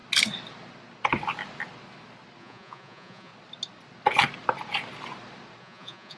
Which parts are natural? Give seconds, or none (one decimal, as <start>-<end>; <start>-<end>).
0.0-2.4; 3.3-5.6